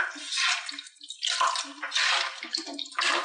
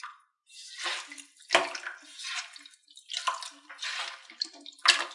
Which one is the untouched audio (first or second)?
second